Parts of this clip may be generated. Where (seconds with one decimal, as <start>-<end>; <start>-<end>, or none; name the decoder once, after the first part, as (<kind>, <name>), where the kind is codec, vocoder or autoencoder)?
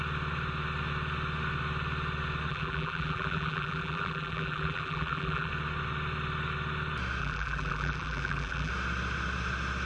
2.5-5.5 (vocoder, BigVGAN v2); 7.2-8.7